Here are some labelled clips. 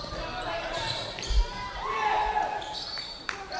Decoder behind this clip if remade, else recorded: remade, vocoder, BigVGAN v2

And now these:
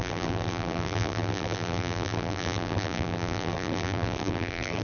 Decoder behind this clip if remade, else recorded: remade, vocoder, BigVGAN v2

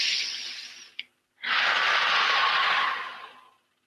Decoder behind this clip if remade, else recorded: recorded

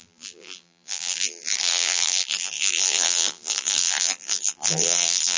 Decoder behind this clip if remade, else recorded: remade, vocoder, BigVGAN v2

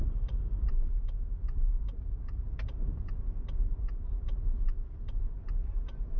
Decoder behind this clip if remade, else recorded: remade, vocoder, BigVGAN v2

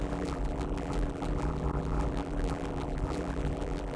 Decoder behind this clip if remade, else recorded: remade, vocoder, BigVGAN v2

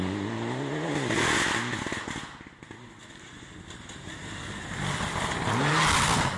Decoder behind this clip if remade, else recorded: recorded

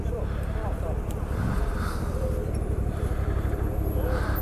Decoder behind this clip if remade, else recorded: remade, vocoder, BigVGAN v2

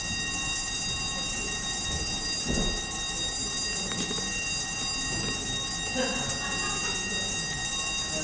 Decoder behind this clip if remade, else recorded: recorded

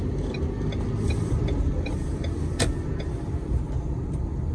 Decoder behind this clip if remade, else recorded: recorded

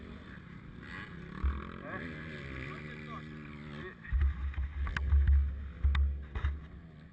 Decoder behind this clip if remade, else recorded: recorded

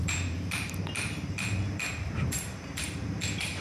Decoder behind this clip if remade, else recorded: remade, vocoder, BigVGAN v2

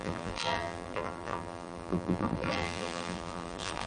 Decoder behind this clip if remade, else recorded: remade, vocoder, BigVGAN v2